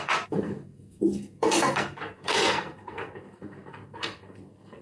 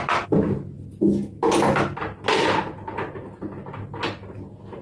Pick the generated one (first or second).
first